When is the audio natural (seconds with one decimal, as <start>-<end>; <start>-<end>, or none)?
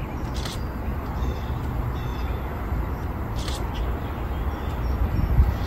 0.0-0.9; 1.5-2.1; 3.8-5.7